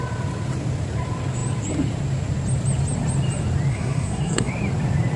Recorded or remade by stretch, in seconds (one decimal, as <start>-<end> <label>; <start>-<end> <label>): 0.0-3.7 recorded; 3.7-4.5 remade; 4.5-5.2 recorded